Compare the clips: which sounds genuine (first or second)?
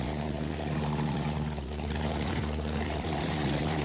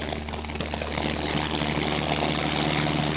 second